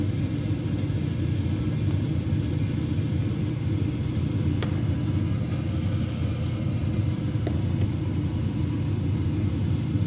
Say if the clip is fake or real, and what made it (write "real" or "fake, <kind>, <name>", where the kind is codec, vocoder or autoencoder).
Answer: real